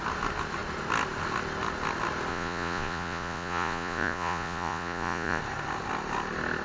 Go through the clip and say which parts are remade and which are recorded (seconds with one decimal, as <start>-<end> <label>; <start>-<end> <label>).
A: 0.0-2.3 recorded; 2.3-5.4 remade; 5.4-6.6 recorded